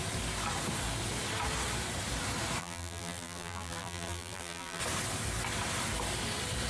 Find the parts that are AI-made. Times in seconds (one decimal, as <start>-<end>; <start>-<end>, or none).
2.6-4.8